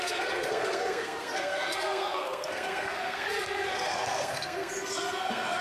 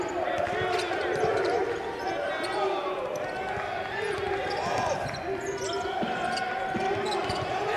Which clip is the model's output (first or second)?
first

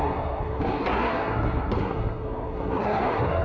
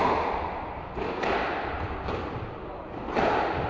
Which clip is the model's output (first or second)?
first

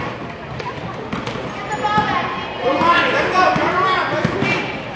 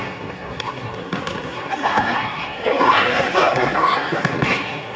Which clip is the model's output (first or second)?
second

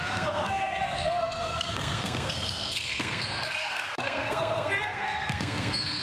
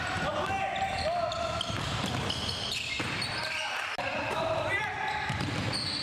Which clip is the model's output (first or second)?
first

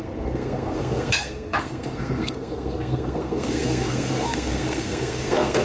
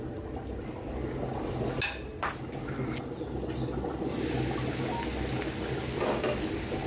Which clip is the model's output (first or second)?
first